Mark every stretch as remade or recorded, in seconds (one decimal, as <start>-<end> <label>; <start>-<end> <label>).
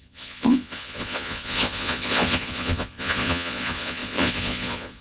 0.0-5.0 remade